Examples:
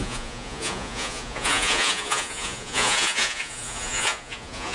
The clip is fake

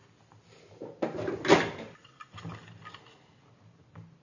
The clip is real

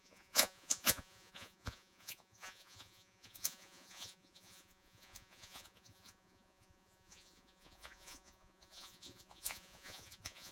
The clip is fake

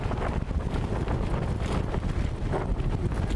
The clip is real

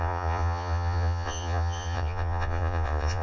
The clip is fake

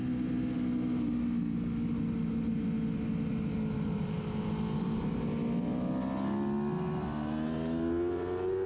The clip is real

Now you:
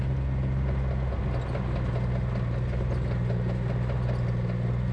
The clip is real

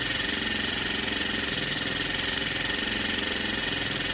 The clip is fake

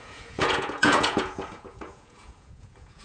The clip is fake